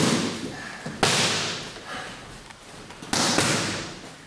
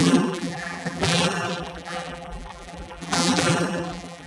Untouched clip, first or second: first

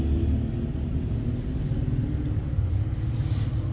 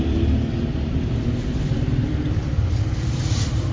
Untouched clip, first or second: first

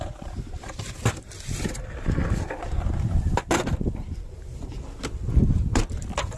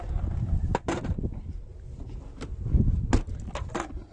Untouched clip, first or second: second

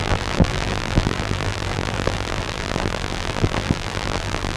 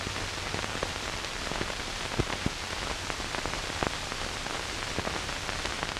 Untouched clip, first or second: second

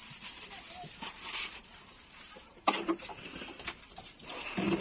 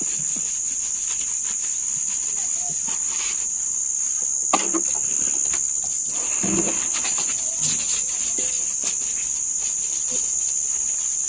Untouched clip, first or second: second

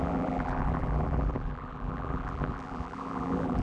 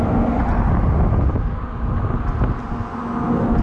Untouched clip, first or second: second